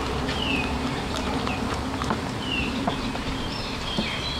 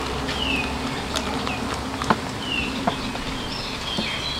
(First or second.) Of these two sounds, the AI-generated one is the first